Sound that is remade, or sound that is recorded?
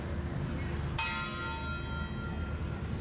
recorded